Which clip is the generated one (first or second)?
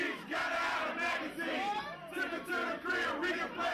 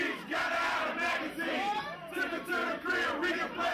second